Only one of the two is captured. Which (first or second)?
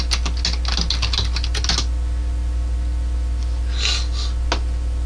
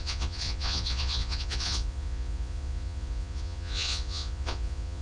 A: first